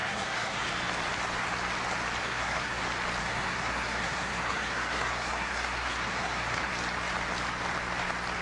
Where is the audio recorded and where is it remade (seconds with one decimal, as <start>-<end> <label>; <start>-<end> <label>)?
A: 0.0-0.7 remade; 0.7-2.2 recorded; 2.2-2.8 remade; 2.8-3.2 recorded; 3.2-6.7 remade; 6.7-8.4 recorded